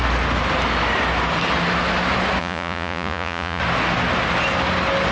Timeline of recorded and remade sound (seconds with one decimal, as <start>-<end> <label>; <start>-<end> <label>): 0.0-2.4 recorded; 2.4-3.6 remade; 3.6-5.1 recorded